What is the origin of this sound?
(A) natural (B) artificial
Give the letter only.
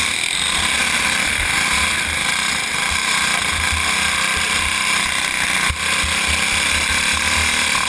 A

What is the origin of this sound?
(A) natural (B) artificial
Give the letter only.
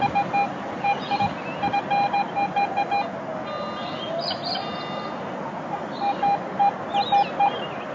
A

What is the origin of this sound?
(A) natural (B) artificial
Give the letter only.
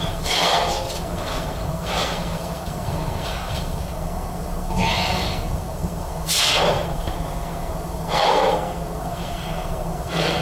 B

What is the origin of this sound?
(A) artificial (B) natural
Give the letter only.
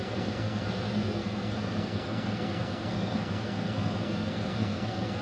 A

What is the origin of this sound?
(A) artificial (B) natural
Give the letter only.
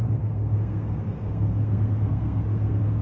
A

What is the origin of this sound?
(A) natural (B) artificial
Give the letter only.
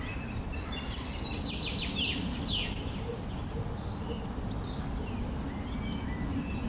A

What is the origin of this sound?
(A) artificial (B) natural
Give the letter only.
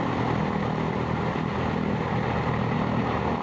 B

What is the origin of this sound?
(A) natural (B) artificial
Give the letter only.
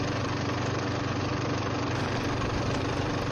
A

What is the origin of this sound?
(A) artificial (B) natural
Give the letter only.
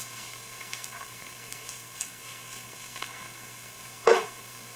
A